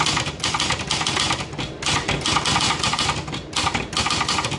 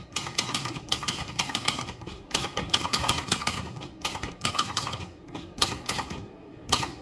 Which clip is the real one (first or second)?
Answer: first